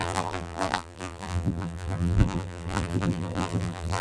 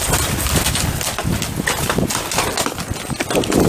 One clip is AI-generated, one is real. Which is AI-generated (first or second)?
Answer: first